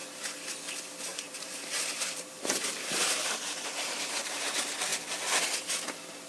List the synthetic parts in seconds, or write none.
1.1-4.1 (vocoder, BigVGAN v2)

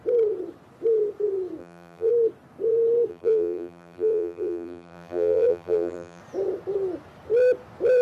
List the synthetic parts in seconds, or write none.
1.6-2.1 (vocoder, BigVGAN v2); 3.1-6.2

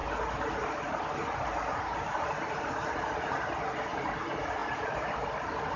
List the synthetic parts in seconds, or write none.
none